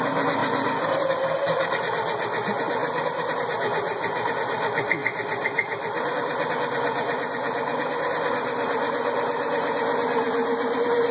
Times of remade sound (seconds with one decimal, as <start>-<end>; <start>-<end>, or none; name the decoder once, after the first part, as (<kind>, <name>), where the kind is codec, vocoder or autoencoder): 2.8-3.3 (vocoder, BigVGAN v2); 5.0-6.5